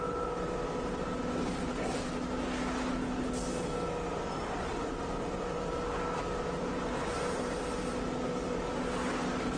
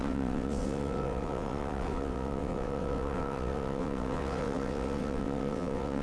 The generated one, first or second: second